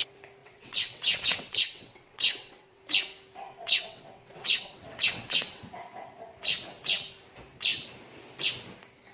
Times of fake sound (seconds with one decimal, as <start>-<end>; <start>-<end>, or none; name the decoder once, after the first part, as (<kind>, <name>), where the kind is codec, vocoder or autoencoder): 0.4-2.8 (vocoder, WaveNeXt); 3.4-5.6